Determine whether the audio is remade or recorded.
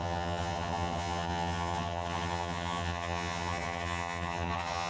remade